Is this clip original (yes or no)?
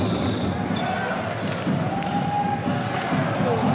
yes